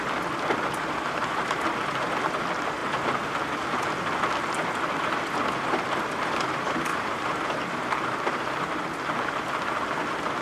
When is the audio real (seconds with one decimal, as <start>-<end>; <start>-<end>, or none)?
0.0-6.9; 8.8-10.4